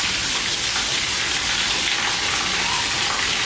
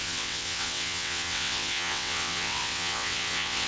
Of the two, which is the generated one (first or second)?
second